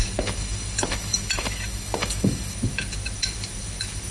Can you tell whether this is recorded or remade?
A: remade